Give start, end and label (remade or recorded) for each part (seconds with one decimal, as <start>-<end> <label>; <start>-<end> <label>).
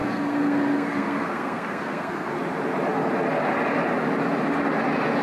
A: 0.0-2.3 remade; 2.3-5.2 recorded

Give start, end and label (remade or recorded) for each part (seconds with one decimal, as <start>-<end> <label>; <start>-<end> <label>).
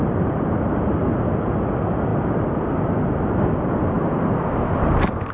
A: 0.0-5.3 recorded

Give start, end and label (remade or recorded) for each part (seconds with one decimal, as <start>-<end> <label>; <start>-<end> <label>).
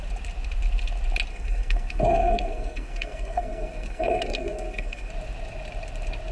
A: 0.0-1.3 recorded; 1.3-5.1 remade; 5.1-6.3 recorded